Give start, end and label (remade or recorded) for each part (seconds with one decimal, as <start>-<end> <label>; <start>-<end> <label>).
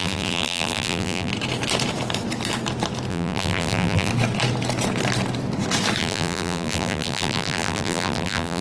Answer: 0.0-1.3 remade; 1.3-3.1 recorded; 3.1-4.1 remade; 4.1-6.0 recorded; 6.0-8.6 remade